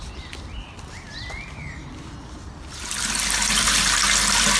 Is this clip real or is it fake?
real